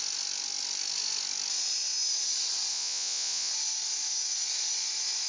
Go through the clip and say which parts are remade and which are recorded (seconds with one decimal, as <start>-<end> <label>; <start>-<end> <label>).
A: 0.0-2.7 recorded; 2.7-3.5 remade; 3.5-5.3 recorded